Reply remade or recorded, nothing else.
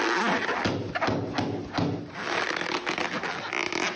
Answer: recorded